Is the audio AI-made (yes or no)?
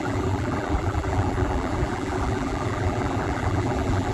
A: yes